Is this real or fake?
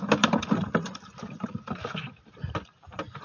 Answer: fake